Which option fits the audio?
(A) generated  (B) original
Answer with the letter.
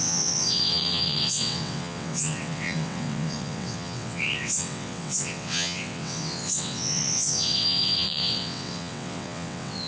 A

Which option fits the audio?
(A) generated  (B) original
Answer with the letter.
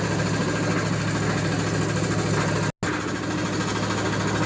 B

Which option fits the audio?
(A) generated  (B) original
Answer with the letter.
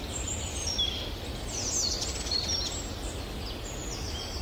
B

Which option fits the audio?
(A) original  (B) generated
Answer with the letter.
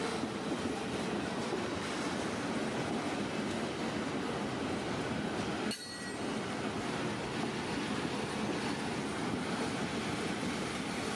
A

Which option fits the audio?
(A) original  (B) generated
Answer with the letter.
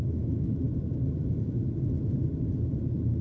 A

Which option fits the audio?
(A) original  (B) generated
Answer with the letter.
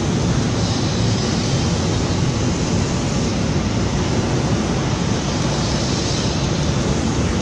A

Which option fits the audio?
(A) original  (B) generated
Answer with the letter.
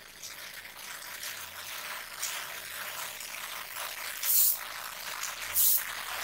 A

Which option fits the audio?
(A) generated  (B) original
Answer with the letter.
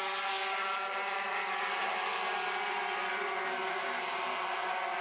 B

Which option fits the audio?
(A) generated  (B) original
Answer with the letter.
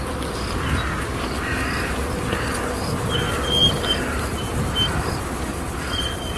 B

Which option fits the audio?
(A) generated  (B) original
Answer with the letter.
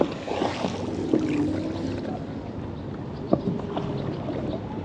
B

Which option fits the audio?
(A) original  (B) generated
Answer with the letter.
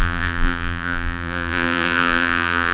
B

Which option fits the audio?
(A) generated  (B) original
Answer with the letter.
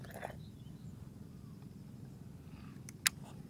B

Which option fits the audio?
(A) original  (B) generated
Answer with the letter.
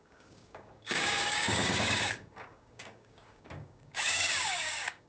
B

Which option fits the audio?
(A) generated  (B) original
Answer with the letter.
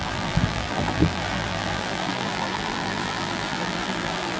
A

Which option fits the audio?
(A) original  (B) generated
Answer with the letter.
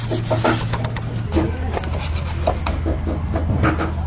A